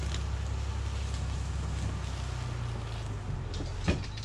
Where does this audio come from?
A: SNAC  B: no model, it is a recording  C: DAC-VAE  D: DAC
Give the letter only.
B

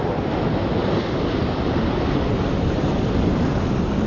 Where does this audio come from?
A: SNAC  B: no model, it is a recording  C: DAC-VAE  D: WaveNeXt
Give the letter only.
B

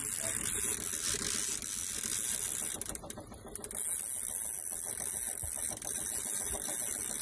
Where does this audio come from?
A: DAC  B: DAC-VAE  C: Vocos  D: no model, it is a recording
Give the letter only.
D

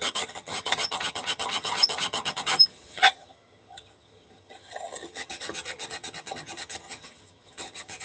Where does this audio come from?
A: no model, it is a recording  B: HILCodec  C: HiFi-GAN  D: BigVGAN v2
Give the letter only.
C